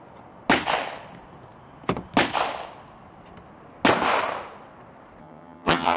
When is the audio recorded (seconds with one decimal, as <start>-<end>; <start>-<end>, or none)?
0.0-5.2